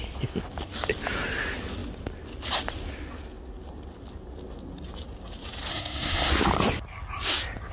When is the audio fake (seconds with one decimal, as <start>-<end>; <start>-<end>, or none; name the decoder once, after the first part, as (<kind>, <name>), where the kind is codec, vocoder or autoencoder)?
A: 5.7-6.3 (codec, SNAC)